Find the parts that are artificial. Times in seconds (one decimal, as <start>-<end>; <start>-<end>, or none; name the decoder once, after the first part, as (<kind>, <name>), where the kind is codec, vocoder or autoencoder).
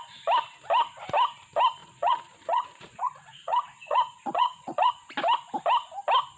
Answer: 1.8-4.9 (vocoder, Vocos)